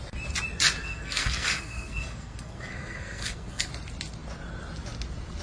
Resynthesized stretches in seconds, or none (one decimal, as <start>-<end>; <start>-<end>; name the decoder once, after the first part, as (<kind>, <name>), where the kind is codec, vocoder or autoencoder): 0.8-3.7 (codec, SNAC)